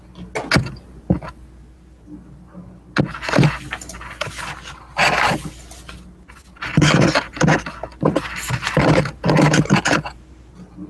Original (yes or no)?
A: yes